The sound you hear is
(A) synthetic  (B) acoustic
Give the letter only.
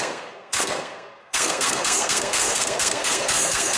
A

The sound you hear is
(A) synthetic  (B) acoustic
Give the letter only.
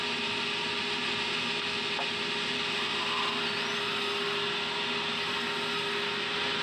B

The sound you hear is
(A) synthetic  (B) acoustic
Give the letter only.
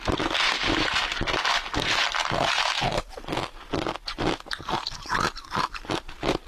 B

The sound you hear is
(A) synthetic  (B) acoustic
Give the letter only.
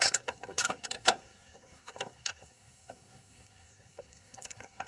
A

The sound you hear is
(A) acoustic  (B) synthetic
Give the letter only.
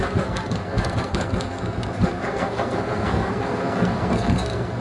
B